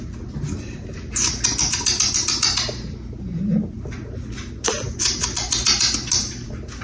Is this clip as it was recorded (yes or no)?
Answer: yes